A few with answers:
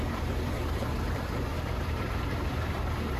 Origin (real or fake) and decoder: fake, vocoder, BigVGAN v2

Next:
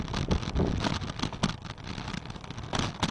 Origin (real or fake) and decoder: real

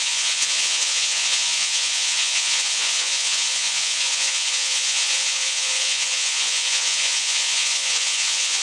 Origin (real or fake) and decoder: fake, vocoder, Vocos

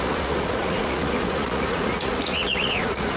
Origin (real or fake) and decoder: fake, vocoder, Vocos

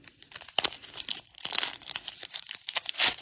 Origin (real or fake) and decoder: real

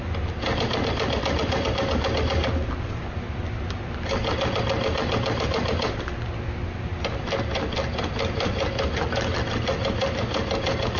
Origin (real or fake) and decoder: real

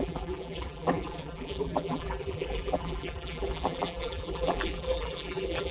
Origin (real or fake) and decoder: fake, vocoder, BigVGAN v2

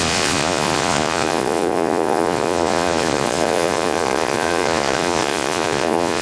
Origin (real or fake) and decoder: fake, vocoder, Vocos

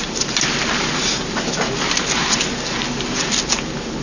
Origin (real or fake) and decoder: real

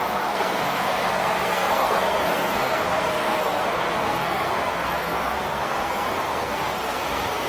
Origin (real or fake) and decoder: fake, codec, SNAC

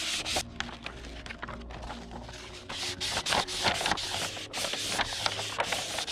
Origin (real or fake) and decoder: real